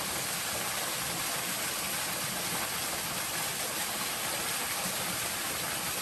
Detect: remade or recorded recorded